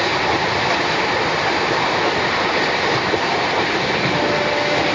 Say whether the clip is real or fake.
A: real